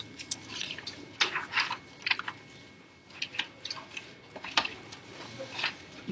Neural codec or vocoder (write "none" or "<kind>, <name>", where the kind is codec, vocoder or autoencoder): none